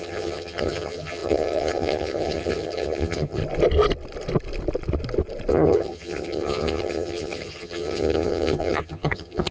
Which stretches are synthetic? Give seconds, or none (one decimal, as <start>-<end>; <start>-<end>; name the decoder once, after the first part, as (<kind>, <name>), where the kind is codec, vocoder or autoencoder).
0.0-3.4 (vocoder, HiFi-GAN); 5.5-9.5

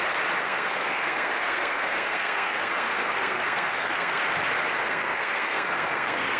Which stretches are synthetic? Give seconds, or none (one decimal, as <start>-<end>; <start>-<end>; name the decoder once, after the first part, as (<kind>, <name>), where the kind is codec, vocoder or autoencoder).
0.4-4.2 (codec, SNAC); 4.8-6.4

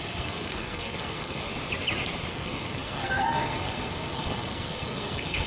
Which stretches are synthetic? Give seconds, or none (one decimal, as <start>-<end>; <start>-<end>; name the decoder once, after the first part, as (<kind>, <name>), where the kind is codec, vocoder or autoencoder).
0.0-1.5 (codec, SNAC); 2.3-5.5

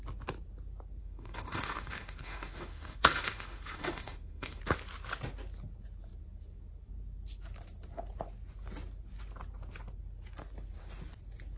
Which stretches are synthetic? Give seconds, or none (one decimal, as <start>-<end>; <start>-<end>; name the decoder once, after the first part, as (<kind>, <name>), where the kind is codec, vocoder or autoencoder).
1.0-4.6 (autoencoder, DAC-VAE)

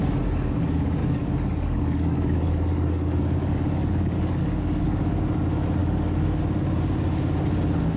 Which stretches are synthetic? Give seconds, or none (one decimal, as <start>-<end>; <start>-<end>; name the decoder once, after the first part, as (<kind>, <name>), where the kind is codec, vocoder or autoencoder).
1.0-5.0 (codec, DAC); 5.8-6.4

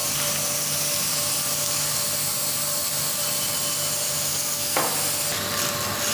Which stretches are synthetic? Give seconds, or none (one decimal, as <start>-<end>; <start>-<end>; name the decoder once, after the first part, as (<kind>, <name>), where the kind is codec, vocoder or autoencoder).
4.3-4.8 (codec, SNAC)

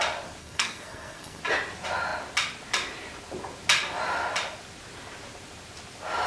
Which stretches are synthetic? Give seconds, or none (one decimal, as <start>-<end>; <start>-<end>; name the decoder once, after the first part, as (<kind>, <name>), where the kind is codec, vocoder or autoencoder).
0.4-1.4 (codec, SNAC)

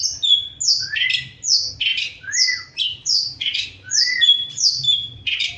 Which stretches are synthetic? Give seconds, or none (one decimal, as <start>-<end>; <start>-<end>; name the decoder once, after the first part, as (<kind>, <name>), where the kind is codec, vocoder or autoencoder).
1.9-5.6 (vocoder, BigVGAN v2)